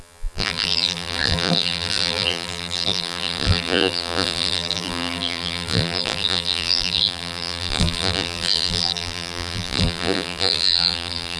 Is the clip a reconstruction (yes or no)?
yes